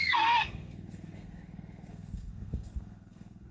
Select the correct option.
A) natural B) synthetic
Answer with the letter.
B